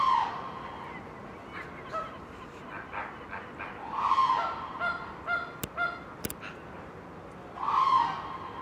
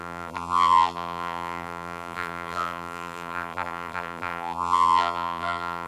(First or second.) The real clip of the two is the first